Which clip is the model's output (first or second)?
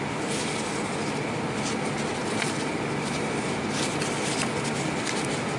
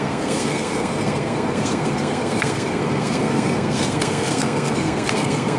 second